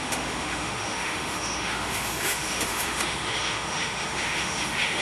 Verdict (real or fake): fake